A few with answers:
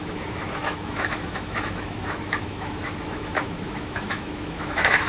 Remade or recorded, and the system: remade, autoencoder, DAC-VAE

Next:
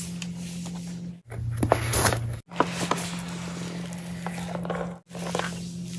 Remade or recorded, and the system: recorded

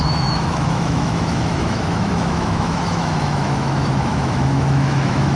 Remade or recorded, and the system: remade, autoencoder, DAC-VAE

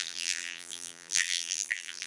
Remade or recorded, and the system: remade, vocoder, BigVGAN v2